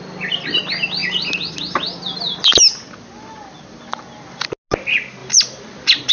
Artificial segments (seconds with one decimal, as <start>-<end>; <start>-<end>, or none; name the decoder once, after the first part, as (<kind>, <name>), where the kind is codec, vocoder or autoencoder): none